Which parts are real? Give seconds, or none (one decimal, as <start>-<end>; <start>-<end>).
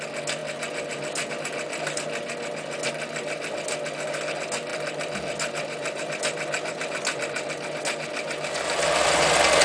0.0-0.4; 1.3-4.7; 7.8-9.6